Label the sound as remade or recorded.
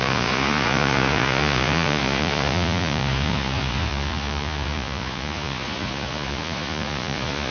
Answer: remade